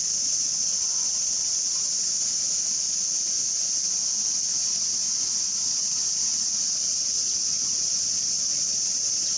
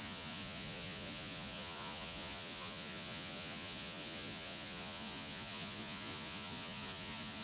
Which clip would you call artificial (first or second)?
second